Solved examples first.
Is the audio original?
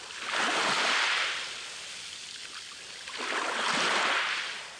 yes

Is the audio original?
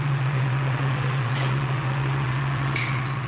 no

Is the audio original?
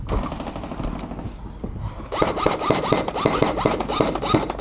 yes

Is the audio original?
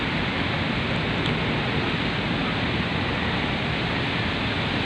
yes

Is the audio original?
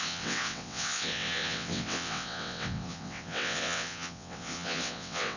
no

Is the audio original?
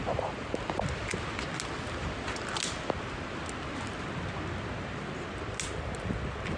yes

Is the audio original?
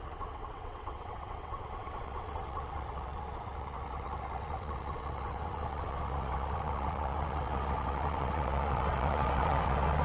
no